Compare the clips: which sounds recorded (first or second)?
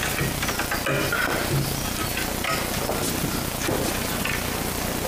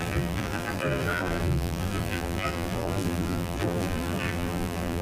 first